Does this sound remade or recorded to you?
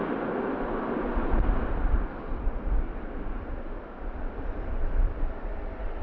recorded